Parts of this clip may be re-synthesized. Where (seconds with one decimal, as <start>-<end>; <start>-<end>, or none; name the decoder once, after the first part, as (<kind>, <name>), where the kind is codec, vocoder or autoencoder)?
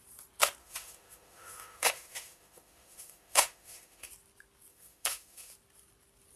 0.6-4.1 (autoencoder, DAC-VAE); 4.7-5.5